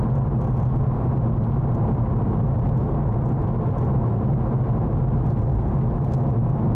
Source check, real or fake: real